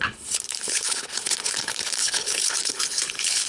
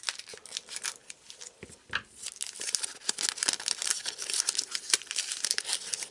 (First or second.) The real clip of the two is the second